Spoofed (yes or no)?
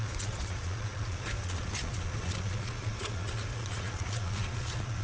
yes